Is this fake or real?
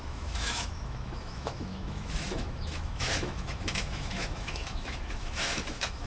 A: fake